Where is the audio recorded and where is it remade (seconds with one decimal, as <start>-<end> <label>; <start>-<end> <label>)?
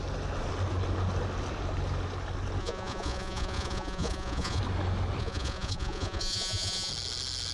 0.0-2.6 recorded; 2.6-4.6 remade; 4.6-5.2 recorded; 5.2-6.9 remade; 6.9-7.5 recorded